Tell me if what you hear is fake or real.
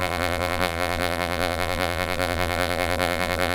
fake